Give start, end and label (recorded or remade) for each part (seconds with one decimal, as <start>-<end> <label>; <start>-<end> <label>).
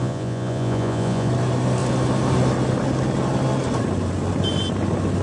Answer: 0.0-1.3 remade; 1.3-5.2 recorded